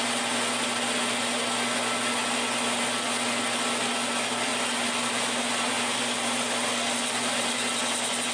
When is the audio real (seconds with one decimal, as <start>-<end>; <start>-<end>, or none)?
0.0-8.3